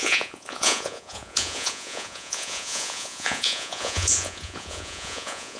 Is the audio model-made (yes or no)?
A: yes